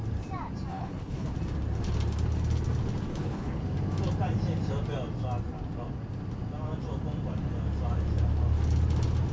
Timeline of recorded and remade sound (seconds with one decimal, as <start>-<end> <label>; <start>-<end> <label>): 0.0-0.7 recorded; 0.7-1.3 remade; 1.3-3.1 recorded; 3.1-3.6 remade; 3.6-9.3 recorded